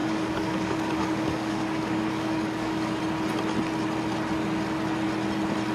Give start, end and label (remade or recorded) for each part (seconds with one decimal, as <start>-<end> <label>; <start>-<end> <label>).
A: 0.0-3.0 remade; 3.0-5.7 recorded